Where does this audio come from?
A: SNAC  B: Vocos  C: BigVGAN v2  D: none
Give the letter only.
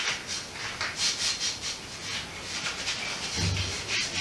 D